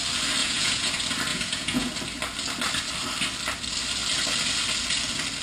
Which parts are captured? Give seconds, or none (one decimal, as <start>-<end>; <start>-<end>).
0.0-0.4; 0.9-1.3; 1.9-5.4